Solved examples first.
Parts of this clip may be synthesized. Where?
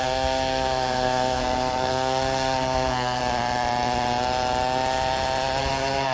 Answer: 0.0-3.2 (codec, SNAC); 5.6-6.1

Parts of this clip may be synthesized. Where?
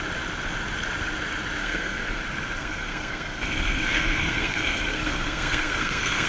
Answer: 1.6-2.2 (codec, SNAC); 2.6-6.3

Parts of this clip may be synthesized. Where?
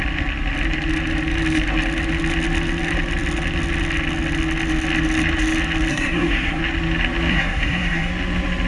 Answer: 5.9-6.6 (codec, SNAC); 7.3-8.1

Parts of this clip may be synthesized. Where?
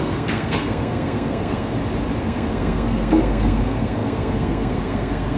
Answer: 0.0-1.7 (codec, SNAC); 2.2-5.4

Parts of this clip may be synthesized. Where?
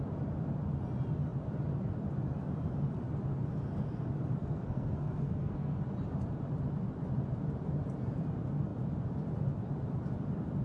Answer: 4.4-5.8 (codec, SNAC)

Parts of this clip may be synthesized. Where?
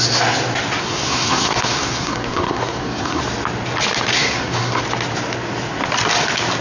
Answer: 0.8-3.2 (codec, SNAC); 4.1-4.8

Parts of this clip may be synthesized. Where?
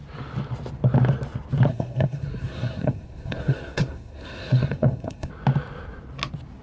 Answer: 1.7-5.3 (codec, SNAC)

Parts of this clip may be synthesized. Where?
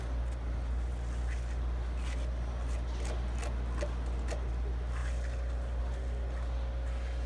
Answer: none